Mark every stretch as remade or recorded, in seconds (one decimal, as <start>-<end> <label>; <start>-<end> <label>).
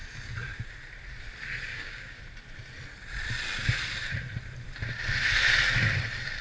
0.0-1.7 recorded; 1.7-2.2 remade; 2.2-6.4 recorded